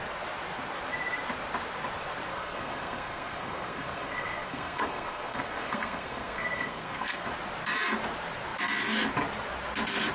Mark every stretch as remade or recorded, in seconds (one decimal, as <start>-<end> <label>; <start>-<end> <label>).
0.0-2.3 recorded; 2.3-7.3 remade; 7.3-10.1 recorded